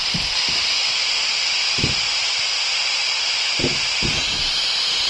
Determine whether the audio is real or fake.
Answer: real